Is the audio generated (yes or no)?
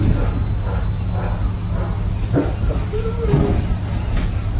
no